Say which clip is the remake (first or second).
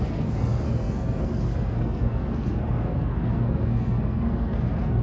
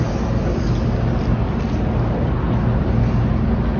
first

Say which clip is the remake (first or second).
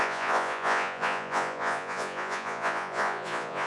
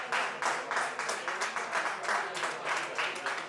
first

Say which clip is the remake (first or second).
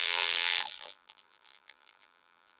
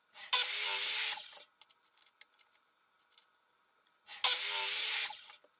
first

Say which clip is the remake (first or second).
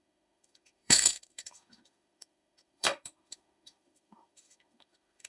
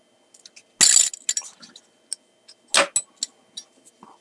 first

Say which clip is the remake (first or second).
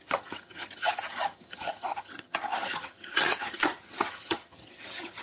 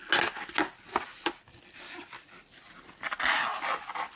first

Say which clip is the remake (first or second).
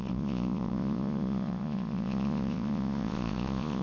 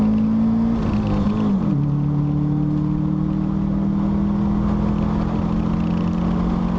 first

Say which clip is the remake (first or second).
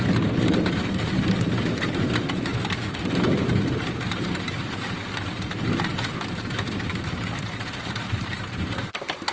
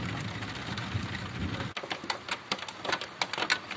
first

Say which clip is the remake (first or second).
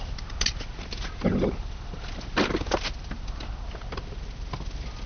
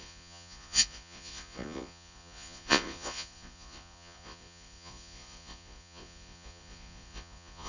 second